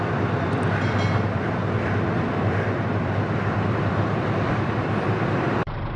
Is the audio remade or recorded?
remade